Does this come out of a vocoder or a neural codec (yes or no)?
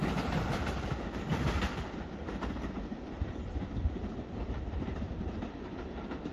yes